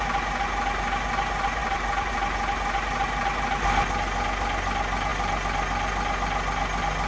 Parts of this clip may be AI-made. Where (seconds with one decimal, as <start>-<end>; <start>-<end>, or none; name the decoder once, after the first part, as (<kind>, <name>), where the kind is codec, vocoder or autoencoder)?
1.6-2.1 (vocoder, BigVGAN v2)